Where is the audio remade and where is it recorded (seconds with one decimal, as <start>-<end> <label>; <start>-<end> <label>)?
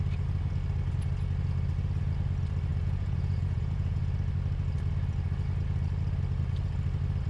0.0-2.7 recorded; 2.7-4.0 remade; 4.0-7.3 recorded